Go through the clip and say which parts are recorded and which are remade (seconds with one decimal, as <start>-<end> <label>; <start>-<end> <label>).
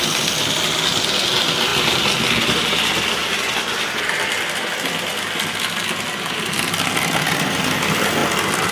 0.0-8.7 recorded